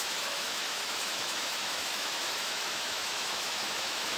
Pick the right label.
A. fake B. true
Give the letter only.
A